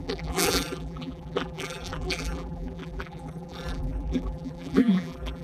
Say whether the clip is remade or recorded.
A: remade